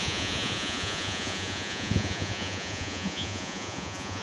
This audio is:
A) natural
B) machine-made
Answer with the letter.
B